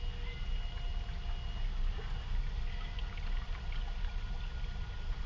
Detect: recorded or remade recorded